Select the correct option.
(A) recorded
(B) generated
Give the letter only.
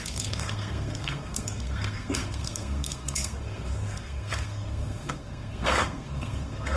B